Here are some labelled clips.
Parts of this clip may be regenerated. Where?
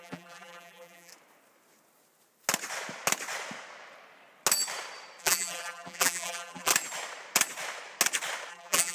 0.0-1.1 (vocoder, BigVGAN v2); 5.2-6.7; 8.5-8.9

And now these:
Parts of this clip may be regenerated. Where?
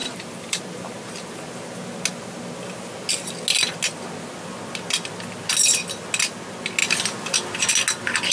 0.0-0.6 (vocoder, BigVGAN v2)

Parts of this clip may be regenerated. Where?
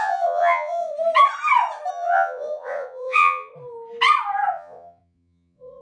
0.0-0.9 (vocoder, Vocos); 1.9-3.5; 4.5-5.8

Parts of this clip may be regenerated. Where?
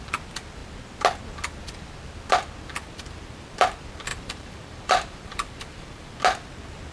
4.1-6.1 (vocoder, BigVGAN v2)